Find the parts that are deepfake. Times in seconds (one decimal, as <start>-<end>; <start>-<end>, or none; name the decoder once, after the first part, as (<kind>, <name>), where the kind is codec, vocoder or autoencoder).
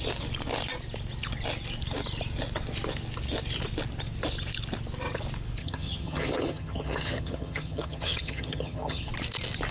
5.6-9.1 (vocoder, HiFi-GAN)